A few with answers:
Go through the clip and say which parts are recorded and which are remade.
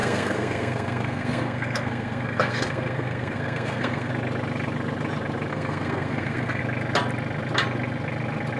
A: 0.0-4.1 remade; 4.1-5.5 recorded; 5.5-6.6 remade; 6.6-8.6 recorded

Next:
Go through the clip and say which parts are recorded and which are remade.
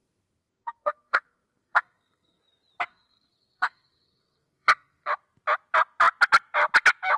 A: 0.0-2.4 remade; 2.4-2.9 recorded; 2.9-5.1 remade; 5.1-7.2 recorded